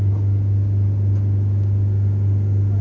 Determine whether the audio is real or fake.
real